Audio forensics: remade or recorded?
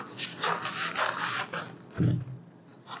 recorded